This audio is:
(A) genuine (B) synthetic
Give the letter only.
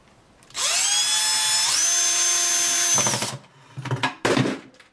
A